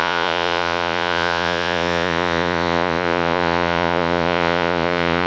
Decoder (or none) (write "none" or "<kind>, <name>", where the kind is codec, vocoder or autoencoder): vocoder, Vocos